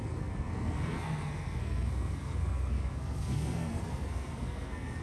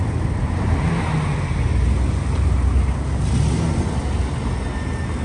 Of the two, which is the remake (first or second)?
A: first